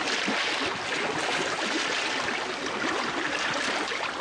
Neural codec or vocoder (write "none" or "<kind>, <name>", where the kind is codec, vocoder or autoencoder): none